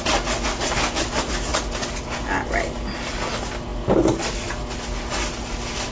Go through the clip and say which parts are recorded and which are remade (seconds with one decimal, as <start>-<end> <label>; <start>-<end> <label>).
0.0-5.9 recorded